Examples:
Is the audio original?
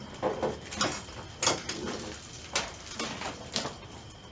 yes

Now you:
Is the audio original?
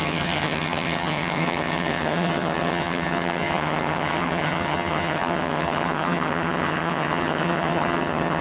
no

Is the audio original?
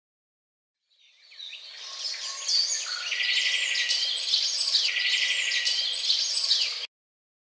yes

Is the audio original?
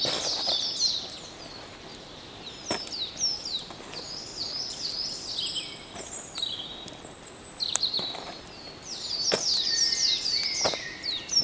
yes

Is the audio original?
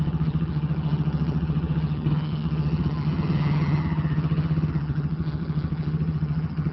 no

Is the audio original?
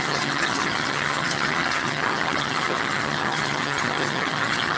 no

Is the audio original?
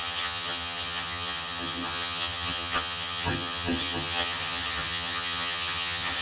no